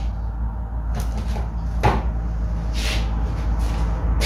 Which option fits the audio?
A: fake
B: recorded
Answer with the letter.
B